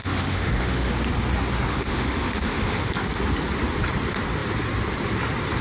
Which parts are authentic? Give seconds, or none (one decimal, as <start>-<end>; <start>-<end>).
0.9-1.7; 2.9-5.6